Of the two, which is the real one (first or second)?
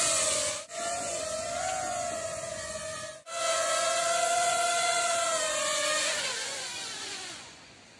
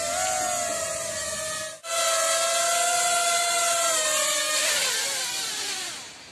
second